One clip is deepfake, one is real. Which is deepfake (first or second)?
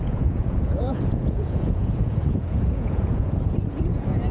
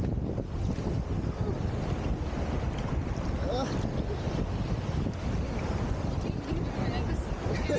first